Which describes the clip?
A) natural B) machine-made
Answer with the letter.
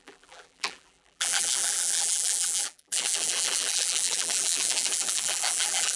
B